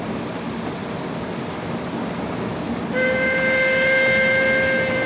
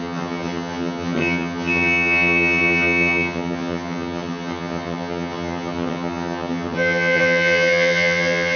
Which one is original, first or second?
first